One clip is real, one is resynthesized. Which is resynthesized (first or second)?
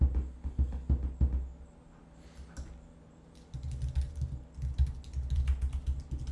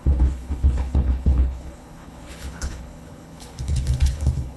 second